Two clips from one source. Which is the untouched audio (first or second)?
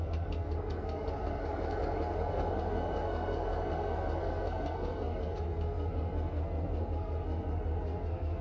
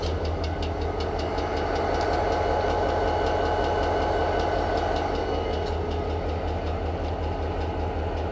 second